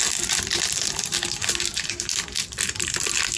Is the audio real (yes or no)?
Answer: yes